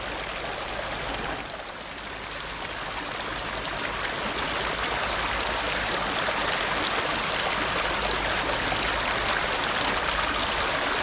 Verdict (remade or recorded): recorded